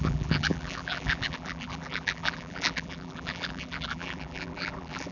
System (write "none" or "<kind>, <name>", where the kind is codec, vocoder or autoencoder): vocoder, BigVGAN v2